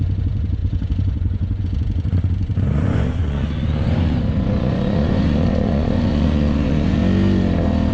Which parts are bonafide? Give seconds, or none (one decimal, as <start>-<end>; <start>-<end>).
7.0-7.9